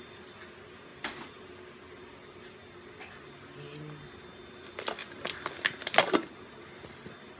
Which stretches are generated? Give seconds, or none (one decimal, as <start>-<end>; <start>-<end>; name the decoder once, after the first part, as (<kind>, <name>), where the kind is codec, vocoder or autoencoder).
none